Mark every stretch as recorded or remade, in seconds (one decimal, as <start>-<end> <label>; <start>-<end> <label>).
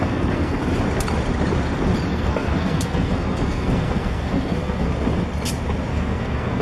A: 0.0-0.6 remade; 0.6-2.1 recorded; 2.1-4.9 remade; 4.9-5.9 recorded; 5.9-6.6 remade